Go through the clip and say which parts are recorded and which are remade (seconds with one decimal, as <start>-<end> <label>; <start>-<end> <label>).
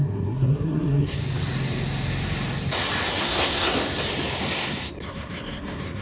0.0-1.2 remade; 1.2-3.2 recorded; 3.2-3.8 remade; 3.8-4.4 recorded; 4.4-6.0 remade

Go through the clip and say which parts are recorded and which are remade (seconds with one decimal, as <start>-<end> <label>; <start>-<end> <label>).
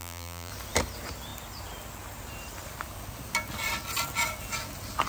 0.0-0.5 remade; 0.5-5.1 recorded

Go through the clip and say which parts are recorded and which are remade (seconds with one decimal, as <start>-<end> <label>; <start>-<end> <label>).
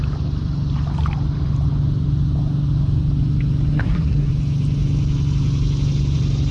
0.0-3.7 recorded; 3.7-4.3 remade; 4.3-6.5 recorded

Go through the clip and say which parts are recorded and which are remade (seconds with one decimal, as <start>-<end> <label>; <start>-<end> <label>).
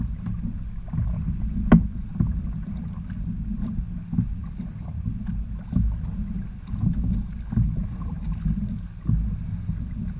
0.0-10.2 recorded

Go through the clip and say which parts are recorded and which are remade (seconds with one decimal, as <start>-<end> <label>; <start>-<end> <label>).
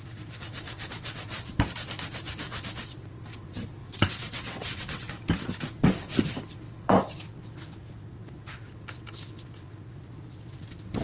0.0-3.8 recorded; 3.8-5.1 remade; 5.1-11.0 recorded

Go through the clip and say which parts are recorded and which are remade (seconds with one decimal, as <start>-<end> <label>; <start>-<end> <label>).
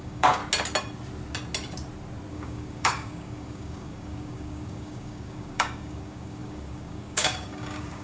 0.0-0.4 remade; 0.4-2.3 recorded; 2.3-8.0 remade